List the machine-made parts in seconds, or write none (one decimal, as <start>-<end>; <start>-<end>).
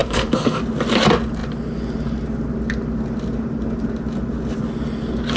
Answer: 0.0-0.6